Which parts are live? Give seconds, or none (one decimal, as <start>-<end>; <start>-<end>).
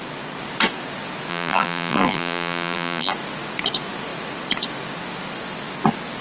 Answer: 0.0-1.3; 3.1-6.2